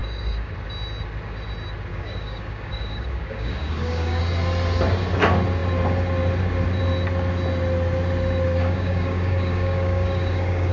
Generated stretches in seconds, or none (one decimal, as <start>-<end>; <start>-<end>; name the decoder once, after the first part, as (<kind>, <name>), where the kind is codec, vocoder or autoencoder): 0.0-0.5 (codec, DAC); 1.9-4.2; 8.6-10.7